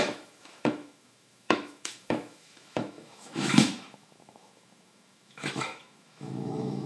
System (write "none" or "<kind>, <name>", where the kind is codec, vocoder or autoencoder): autoencoder, DAC-VAE